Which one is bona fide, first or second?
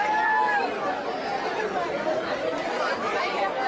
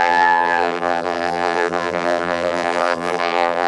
first